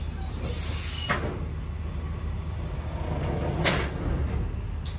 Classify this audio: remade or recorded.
recorded